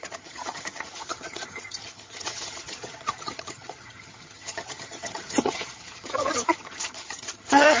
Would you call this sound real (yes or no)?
no